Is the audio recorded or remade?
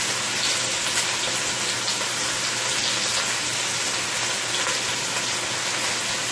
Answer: recorded